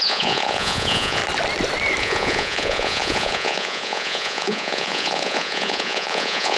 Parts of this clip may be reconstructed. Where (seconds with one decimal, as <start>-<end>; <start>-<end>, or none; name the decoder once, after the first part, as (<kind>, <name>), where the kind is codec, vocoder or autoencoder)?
0.0-1.2 (vocoder, Vocos); 2.0-6.6